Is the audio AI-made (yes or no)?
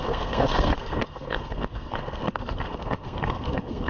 yes